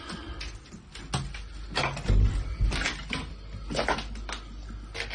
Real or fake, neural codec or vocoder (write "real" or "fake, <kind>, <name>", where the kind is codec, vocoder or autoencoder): real